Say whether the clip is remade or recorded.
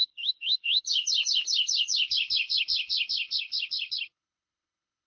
remade